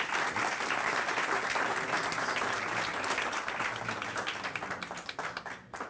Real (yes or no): yes